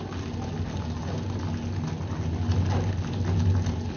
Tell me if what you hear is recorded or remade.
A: recorded